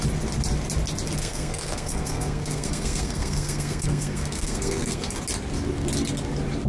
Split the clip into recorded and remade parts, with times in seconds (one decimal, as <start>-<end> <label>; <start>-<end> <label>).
0.0-1.2 recorded; 1.2-5.2 remade; 5.2-6.7 recorded